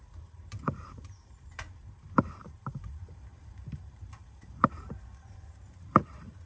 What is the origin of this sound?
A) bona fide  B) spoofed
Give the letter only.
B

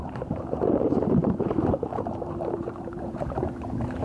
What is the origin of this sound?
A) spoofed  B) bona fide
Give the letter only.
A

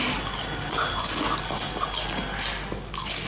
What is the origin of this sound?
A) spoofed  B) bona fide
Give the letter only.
B